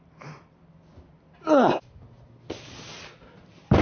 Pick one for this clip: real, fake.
real